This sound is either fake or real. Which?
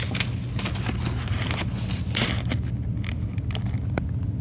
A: real